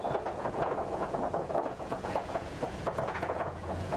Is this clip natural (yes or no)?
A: no